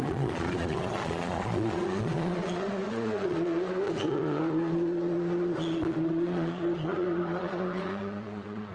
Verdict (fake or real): fake